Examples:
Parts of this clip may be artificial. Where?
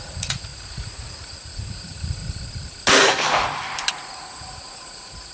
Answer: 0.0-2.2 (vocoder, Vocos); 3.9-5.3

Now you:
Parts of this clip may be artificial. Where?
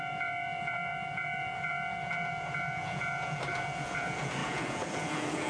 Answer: 0.0-5.5 (vocoder, Vocos)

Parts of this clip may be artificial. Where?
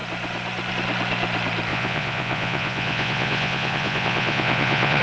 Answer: 1.7-5.0 (vocoder, Vocos)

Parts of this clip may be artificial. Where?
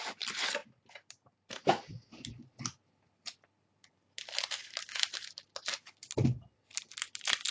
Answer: none